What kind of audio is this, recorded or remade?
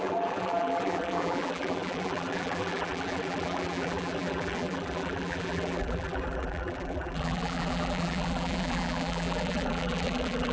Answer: remade